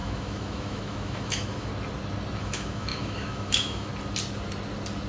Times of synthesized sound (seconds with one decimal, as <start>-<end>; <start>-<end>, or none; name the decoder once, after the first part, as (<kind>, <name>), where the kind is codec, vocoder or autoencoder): 0.0-1.7 (autoencoder, DAC-VAE); 2.4-3.9